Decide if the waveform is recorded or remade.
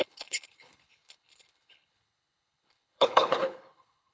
remade